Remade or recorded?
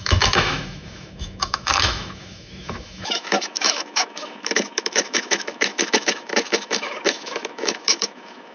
remade